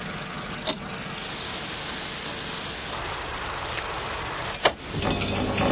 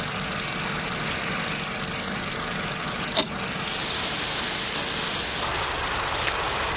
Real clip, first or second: first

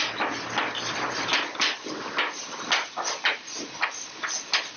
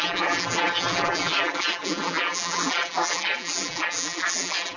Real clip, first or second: first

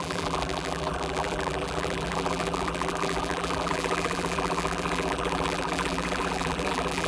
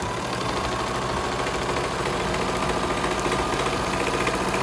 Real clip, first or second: second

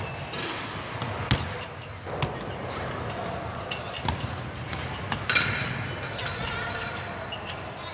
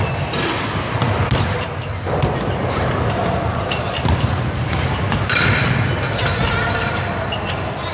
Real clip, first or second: first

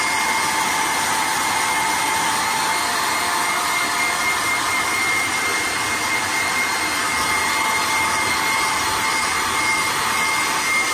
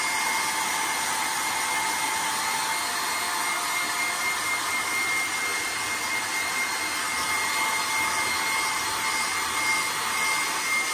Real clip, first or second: second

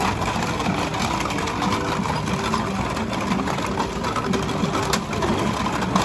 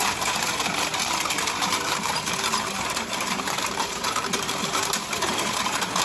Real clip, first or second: first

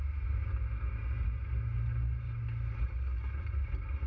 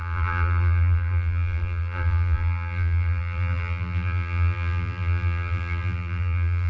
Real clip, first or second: first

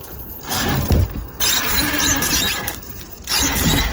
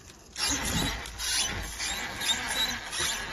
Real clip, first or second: second